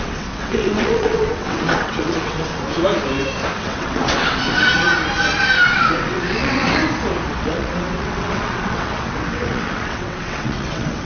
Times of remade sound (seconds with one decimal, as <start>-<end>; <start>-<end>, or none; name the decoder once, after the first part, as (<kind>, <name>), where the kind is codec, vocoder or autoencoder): 0.0-2.5 (vocoder, WaveNeXt); 3.6-4.7; 5.7-6.8; 7.3-11.1